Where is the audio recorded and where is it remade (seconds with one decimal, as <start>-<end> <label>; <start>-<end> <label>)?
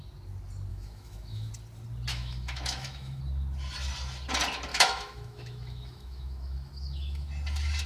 0.0-0.7 recorded; 0.7-1.5 remade; 1.5-2.1 recorded; 2.1-3.2 remade; 3.2-4.7 recorded; 4.7-7.3 remade; 7.3-7.9 recorded